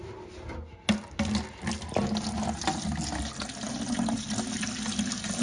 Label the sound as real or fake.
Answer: real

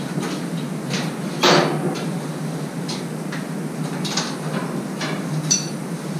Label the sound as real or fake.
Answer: real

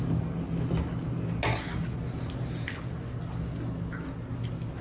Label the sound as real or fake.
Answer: real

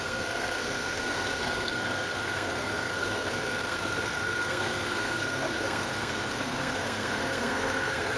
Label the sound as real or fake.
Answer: fake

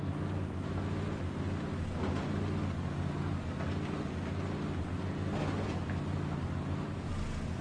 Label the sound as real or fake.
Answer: real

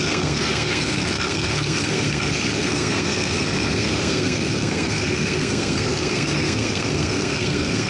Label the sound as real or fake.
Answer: fake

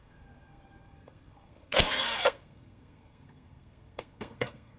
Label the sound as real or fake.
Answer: fake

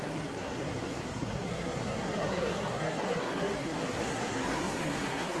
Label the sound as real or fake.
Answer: fake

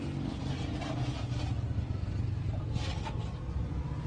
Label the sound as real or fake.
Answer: real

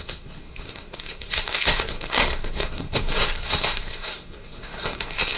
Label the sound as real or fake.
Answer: fake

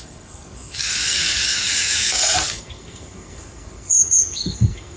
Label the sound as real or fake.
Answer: fake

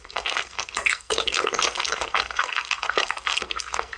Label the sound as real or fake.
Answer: fake